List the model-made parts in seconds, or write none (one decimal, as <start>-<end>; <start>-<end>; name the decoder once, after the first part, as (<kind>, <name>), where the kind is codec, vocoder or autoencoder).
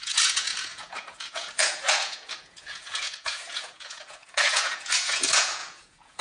0.0-6.2 (vocoder, Vocos)